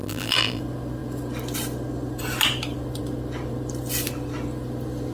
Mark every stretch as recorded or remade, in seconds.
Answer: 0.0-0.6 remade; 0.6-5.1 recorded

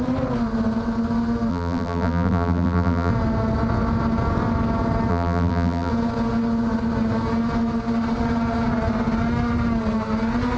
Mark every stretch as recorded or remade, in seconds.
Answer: 0.0-1.5 recorded; 1.5-3.1 remade; 3.1-5.1 recorded; 5.1-5.9 remade; 5.9-10.6 recorded

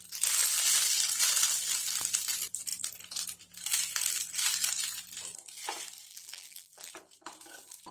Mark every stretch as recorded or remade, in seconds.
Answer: 0.0-6.1 recorded; 6.1-6.9 remade; 6.9-7.9 recorded

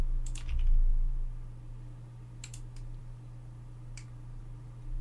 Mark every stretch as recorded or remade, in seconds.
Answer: 0.0-5.0 recorded

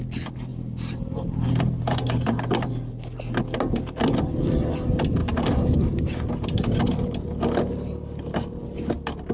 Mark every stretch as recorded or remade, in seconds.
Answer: 0.0-0.5 recorded; 0.5-2.7 remade; 2.7-5.2 recorded; 5.2-6.3 remade; 6.3-9.3 recorded